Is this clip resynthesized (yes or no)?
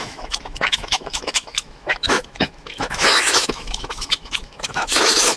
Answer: yes